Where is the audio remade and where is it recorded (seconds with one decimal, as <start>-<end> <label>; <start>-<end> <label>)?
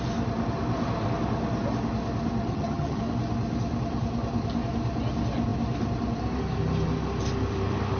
0.0-2.5 recorded; 2.5-3.0 remade; 3.0-8.0 recorded